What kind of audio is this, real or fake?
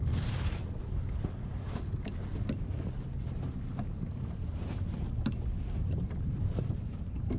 real